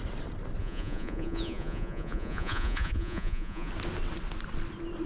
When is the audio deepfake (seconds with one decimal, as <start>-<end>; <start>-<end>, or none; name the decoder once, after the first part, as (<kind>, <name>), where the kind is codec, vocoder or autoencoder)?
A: 0.6-3.7 (vocoder, Vocos)